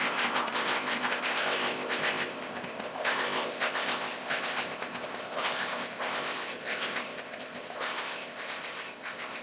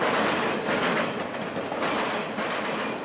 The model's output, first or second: first